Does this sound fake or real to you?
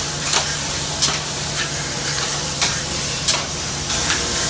fake